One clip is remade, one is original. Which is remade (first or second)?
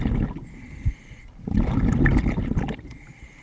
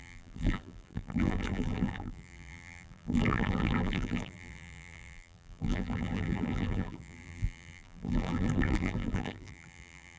second